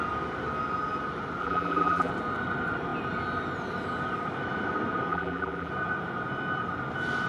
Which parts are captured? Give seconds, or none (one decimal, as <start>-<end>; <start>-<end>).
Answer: 0.0-1.4; 2.1-5.1; 5.7-7.3